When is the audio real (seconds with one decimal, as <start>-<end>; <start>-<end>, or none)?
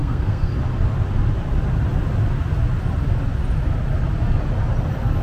0.5-5.2